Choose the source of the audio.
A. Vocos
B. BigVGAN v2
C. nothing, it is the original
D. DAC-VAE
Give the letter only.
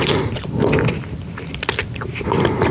B